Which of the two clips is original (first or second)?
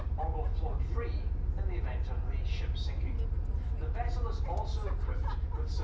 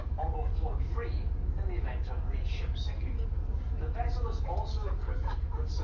first